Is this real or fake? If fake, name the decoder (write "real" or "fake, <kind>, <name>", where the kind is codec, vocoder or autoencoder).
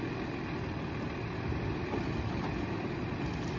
real